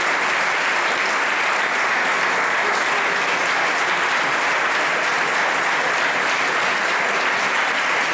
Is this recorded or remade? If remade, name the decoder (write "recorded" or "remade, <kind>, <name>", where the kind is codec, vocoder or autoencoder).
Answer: recorded